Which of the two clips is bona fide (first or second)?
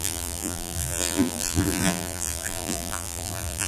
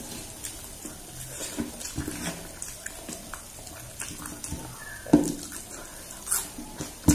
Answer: second